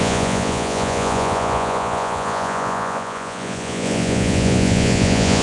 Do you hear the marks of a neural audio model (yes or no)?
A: yes